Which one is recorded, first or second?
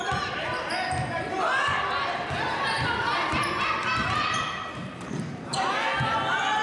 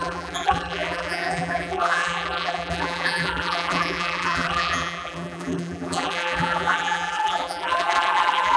first